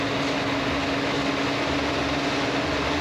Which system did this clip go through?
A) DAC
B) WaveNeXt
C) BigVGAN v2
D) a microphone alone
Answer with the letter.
D